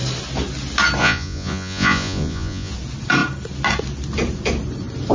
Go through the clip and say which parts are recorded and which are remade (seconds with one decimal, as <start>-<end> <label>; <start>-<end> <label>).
0.0-1.0 recorded; 1.0-2.7 remade; 2.7-5.1 recorded